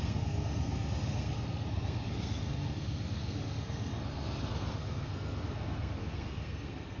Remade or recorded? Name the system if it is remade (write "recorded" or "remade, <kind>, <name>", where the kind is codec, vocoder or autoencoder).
remade, codec, SNAC